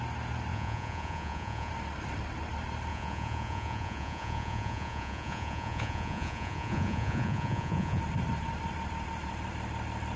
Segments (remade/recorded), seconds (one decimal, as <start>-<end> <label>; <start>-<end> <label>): 0.0-0.5 recorded; 0.5-1.7 remade; 1.7-2.9 recorded; 2.9-8.0 remade; 8.0-10.2 recorded